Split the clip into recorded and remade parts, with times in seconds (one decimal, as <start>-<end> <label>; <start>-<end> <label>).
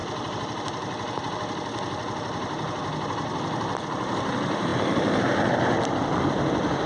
0.0-6.9 recorded